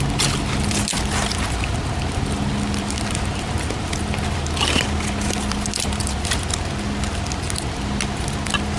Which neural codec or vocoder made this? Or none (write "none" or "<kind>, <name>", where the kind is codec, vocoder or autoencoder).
none